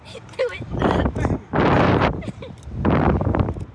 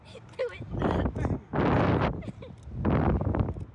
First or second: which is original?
second